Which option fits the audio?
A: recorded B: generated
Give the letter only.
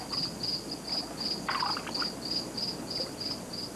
A